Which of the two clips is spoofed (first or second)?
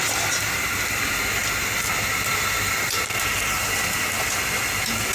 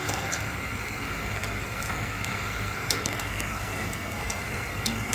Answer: second